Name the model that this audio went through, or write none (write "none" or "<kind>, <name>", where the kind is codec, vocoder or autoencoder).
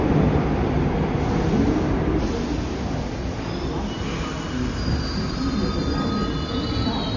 none